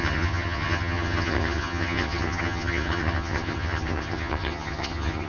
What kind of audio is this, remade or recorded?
remade